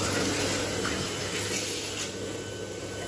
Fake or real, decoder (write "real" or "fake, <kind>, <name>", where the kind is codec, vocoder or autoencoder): real